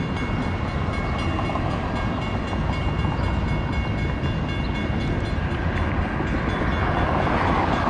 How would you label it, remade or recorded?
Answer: recorded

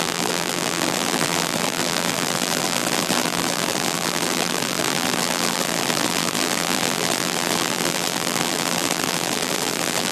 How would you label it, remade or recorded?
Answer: remade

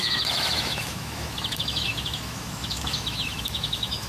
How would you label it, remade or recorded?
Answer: remade